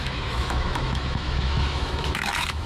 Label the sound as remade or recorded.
remade